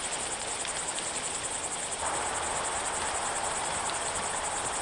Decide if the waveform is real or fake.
real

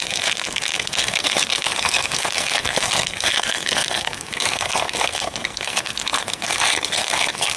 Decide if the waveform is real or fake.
fake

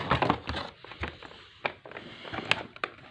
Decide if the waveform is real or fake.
real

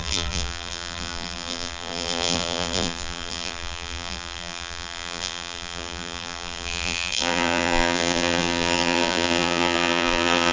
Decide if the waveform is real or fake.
fake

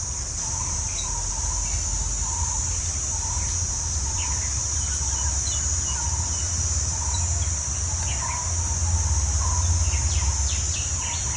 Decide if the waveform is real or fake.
real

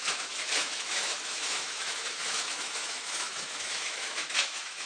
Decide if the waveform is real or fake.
fake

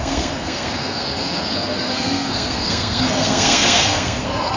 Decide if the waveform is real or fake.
fake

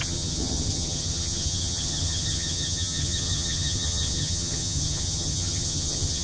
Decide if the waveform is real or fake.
fake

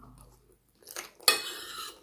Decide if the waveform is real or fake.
real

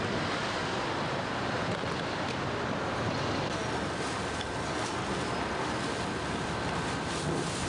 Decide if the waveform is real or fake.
real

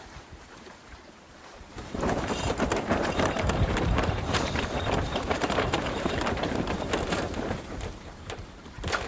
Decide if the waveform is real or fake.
fake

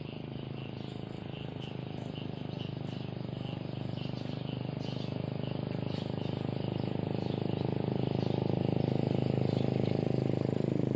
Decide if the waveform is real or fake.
real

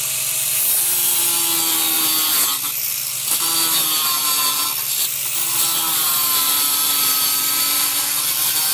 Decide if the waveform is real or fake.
real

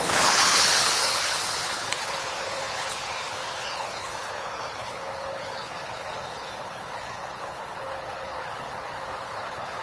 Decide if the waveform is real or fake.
fake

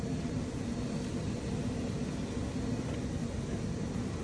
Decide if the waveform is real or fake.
real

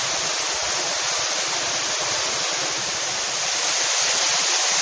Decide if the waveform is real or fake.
real